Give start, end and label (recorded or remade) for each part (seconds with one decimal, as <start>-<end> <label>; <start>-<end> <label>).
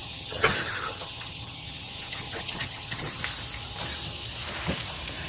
0.0-3.2 remade; 3.2-5.3 recorded